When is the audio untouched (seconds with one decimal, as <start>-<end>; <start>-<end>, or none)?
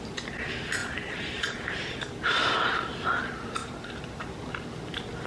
0.0-0.8; 2.1-3.6; 4.3-5.3